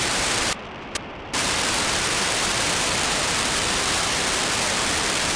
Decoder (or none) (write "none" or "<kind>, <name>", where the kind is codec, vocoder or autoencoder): vocoder, BigVGAN v2